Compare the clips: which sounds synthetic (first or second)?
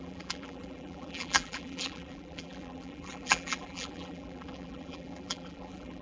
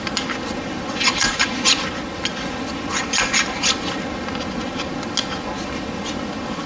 first